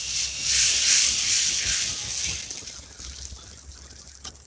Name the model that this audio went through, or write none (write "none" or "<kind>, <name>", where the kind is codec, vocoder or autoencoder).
none